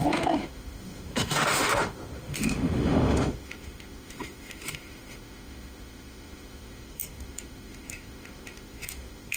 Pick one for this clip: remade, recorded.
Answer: remade